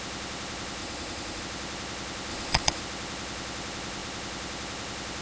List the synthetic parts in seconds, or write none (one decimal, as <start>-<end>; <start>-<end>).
0.8-1.4; 2.3-2.8